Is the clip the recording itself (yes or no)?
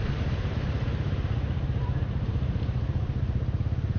no